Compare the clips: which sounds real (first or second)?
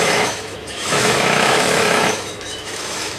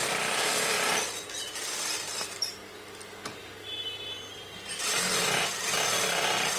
second